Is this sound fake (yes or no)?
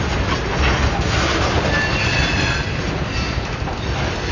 no